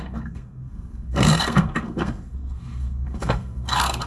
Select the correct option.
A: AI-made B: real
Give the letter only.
A